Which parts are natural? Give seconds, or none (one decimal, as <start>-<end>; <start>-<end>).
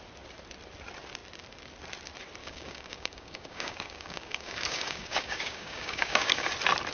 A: 0.0-2.4; 6.5-6.9